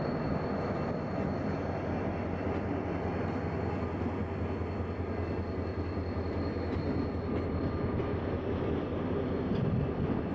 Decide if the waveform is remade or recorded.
recorded